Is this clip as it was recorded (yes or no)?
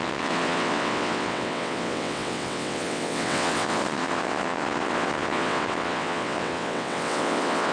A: no